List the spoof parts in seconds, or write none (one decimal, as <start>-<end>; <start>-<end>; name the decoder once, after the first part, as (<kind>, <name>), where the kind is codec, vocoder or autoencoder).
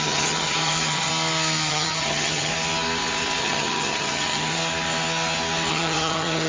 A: 0.0-1.1 (vocoder, HiFi-GAN); 1.7-2.5; 3.4-4.6; 5.7-6.5